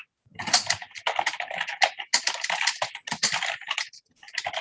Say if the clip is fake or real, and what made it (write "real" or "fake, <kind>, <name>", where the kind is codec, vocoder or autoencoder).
real